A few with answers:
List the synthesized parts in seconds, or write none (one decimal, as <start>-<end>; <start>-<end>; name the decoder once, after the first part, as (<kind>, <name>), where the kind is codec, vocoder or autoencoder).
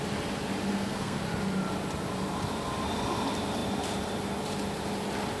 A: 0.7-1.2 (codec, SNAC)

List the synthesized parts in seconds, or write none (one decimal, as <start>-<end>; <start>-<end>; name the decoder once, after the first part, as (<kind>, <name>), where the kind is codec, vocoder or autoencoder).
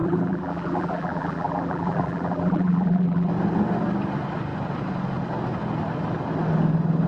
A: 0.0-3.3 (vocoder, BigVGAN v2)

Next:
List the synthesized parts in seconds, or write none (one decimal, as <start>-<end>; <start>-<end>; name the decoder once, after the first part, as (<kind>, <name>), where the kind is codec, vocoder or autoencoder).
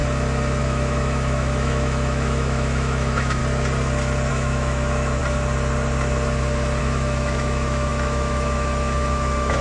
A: 0.6-3.4 (autoencoder, DAC-VAE); 4.3-5.2; 6.8-9.6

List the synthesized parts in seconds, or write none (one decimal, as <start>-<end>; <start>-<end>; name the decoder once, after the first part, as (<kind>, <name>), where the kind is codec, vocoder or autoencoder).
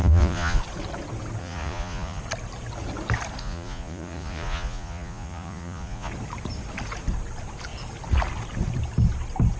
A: 0.0-0.6 (vocoder, Vocos); 1.4-2.2; 3.4-6.1